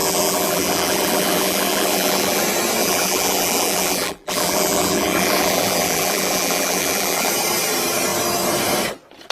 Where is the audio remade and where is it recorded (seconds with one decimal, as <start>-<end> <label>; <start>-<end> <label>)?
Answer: 0.0-2.4 remade; 2.4-2.8 recorded; 2.8-7.3 remade; 7.3-9.3 recorded

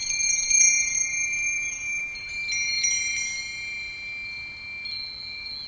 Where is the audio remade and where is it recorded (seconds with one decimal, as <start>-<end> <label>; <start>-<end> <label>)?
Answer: 0.0-3.4 remade; 3.4-5.7 recorded